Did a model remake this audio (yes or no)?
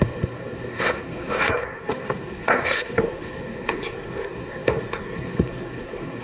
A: yes